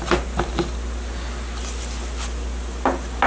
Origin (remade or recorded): recorded